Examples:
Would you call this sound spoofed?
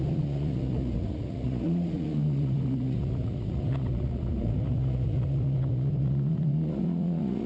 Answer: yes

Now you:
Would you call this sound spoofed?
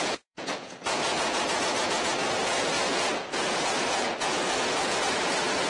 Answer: yes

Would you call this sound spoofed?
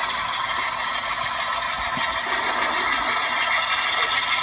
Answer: no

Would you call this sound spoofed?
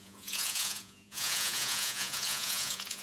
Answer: yes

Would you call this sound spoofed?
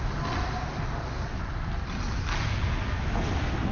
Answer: no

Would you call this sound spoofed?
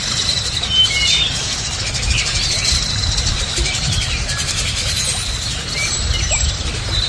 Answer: no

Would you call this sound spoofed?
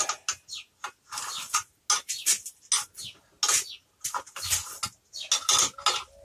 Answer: no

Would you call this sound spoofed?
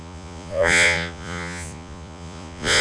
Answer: yes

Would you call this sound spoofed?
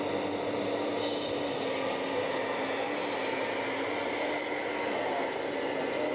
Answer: no